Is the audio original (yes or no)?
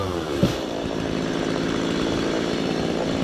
no